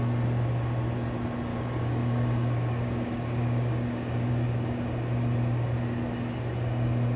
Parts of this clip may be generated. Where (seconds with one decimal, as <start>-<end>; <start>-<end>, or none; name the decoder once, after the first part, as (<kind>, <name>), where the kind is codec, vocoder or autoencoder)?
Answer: 1.5-4.3 (codec, DAC)